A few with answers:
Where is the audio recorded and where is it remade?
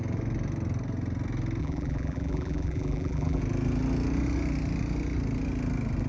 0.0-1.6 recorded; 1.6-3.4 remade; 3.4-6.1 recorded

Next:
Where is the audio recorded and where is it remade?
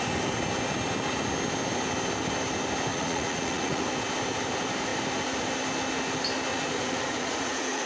0.0-2.9 recorded; 2.9-3.8 remade; 3.8-6.5 recorded; 6.5-7.9 remade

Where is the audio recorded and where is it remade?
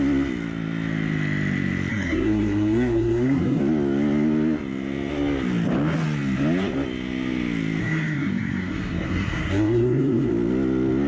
0.0-1.9 recorded; 1.9-3.6 remade; 3.6-7.8 recorded; 7.8-10.3 remade; 10.3-11.1 recorded